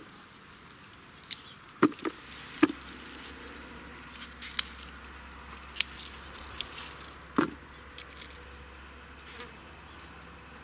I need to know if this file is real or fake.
real